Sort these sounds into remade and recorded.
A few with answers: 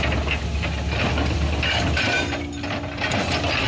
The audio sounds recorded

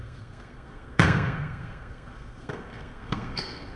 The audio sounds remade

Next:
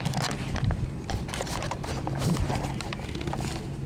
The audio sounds recorded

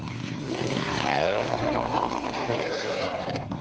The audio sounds remade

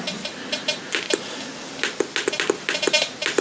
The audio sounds recorded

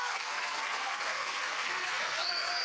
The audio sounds remade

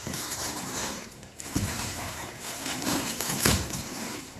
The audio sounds remade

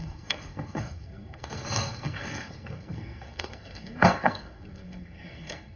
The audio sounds remade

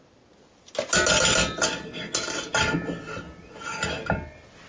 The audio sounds recorded